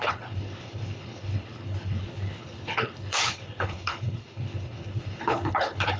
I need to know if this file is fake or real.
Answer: fake